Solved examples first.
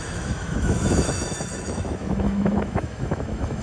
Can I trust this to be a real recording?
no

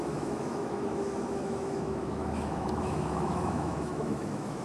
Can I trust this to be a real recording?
no